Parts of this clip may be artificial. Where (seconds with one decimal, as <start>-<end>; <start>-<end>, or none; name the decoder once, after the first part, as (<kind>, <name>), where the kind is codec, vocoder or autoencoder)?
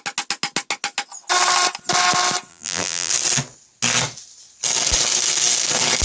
2.5-3.1 (vocoder, BigVGAN v2)